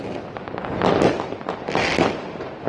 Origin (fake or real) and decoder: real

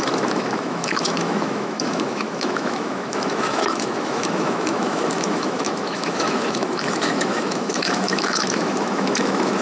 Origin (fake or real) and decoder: fake, autoencoder, DAC-VAE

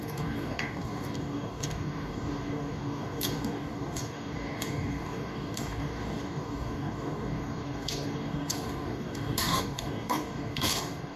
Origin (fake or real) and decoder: fake, codec, DAC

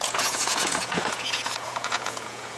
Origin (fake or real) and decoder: fake, vocoder, Vocos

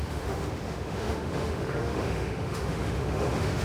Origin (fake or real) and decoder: fake, autoencoder, DAC-VAE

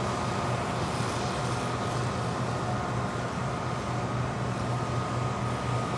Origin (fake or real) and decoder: real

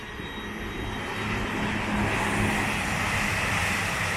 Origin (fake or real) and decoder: real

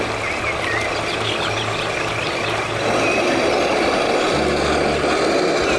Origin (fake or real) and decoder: real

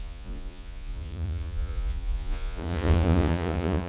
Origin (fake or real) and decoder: fake, vocoder, Vocos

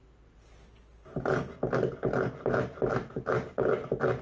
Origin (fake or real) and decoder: real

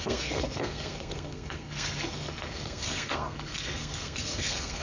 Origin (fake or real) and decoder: fake, codec, SNAC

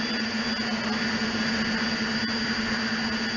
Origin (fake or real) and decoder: real